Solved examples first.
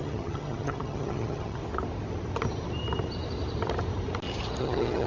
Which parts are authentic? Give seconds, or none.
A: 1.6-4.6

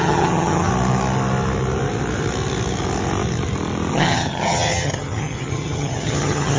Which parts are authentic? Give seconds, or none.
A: 0.7-3.9

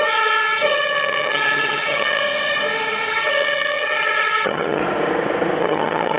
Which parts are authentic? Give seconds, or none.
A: 2.2-3.1; 4.8-5.6

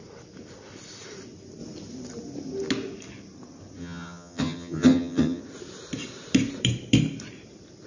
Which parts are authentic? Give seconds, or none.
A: 0.0-3.8; 5.4-7.9

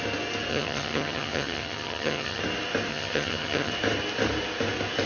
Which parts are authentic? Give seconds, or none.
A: 0.0-0.5; 2.4-2.9; 3.7-5.1

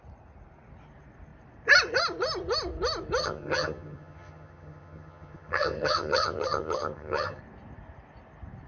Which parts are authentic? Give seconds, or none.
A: 0.0-3.2; 7.4-8.7

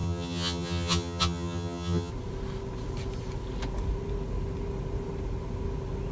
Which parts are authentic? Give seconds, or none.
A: 2.1-6.1

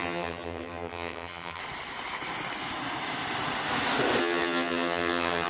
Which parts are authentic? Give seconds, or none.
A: 1.6-4.2